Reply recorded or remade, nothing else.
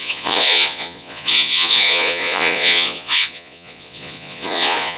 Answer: remade